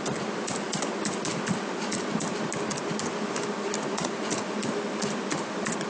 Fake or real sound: real